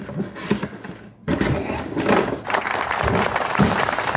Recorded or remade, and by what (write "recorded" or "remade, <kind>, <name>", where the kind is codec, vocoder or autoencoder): recorded